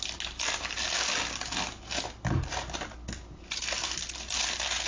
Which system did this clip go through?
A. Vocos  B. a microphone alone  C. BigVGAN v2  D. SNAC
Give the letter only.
B